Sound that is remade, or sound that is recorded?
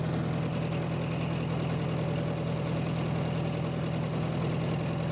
recorded